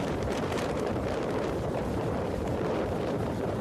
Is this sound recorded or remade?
remade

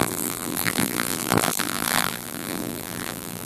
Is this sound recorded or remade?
remade